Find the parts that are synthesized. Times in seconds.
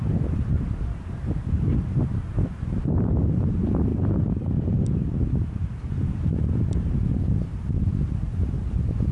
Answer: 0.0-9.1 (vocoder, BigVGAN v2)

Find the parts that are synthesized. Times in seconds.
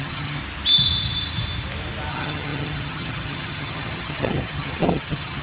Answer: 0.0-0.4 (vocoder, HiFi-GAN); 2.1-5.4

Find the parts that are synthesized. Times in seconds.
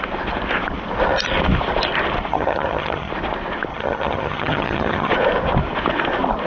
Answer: 2.3-3.1 (vocoder, HiFi-GAN); 3.7-5.1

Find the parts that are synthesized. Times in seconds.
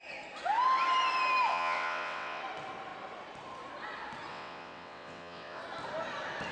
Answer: 1.5-2.4 (vocoder, WaveNeXt); 4.3-5.6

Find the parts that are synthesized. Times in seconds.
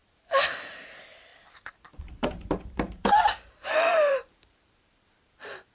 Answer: 1.3-4.7 (vocoder, BigVGAN v2)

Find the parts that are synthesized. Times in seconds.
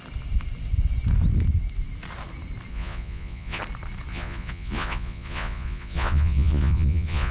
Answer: 2.7-3.6 (vocoder, Vocos); 4.1-7.3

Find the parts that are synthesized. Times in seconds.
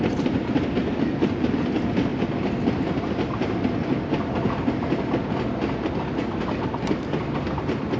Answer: none